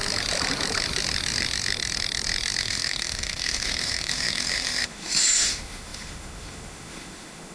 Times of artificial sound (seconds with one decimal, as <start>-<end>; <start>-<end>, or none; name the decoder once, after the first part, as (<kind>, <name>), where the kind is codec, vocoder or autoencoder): 2.6-7.5 (autoencoder, DAC-VAE)